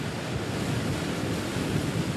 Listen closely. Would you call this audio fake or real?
real